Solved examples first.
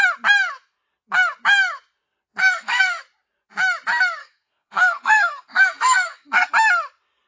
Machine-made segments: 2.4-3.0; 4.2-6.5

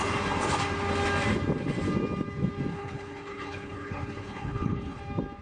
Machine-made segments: 2.7-5.0

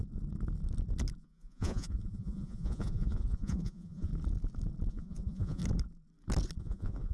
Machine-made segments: 1.2-4.1; 4.9-5.6; 6.6-7.1

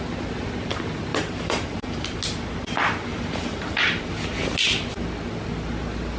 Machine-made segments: 1.1-2.0; 3.1-4.0

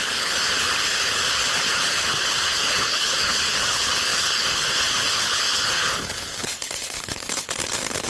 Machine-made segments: 0.0-8.1

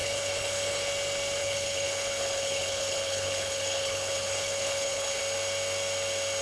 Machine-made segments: 0.0-0.9; 1.4-5.2

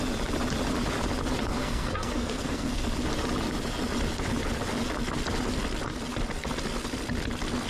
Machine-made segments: 1.5-2.8

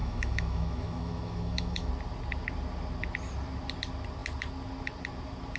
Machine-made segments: 0.0-1.9